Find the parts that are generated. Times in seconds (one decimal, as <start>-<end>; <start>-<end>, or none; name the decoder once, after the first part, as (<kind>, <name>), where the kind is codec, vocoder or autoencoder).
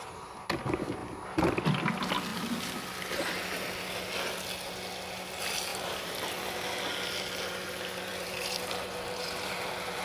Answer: 1.0-1.6 (vocoder, BigVGAN v2); 5.7-6.3; 8.1-10.0